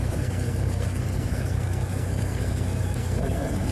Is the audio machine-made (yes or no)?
yes